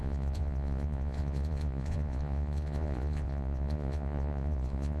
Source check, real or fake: fake